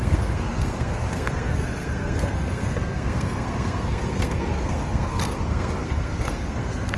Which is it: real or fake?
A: fake